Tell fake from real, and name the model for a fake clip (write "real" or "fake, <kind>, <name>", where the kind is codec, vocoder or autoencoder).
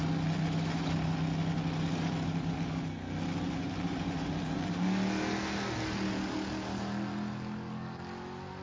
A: real